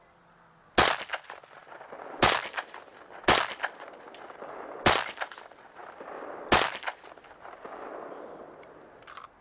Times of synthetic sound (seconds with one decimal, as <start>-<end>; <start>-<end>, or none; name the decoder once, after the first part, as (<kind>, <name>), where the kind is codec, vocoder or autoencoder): none